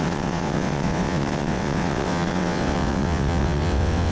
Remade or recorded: remade